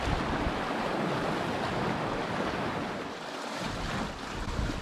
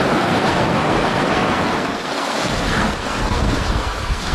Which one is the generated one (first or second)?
second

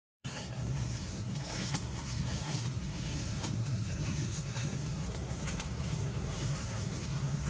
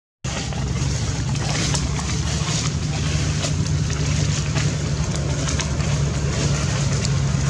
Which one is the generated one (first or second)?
first